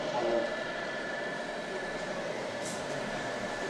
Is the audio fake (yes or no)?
yes